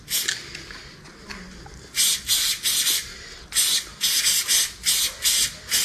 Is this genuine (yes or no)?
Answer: yes